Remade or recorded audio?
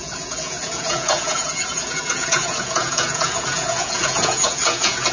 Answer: remade